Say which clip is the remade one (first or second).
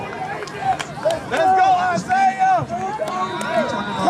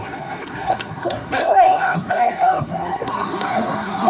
second